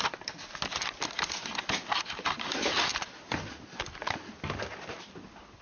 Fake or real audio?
fake